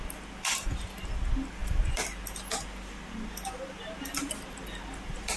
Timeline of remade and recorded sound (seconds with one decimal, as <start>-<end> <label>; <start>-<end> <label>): 0.0-5.4 recorded

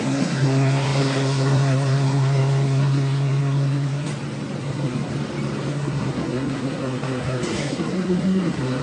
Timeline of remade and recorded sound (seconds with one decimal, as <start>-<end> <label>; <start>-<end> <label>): 0.0-4.1 remade; 4.1-4.6 recorded; 4.6-5.1 remade; 5.1-5.7 recorded; 5.7-8.8 remade